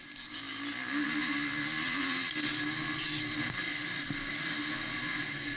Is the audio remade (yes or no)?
no